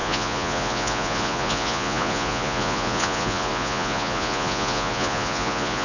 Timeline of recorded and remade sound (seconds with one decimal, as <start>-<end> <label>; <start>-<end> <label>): 0.0-5.8 remade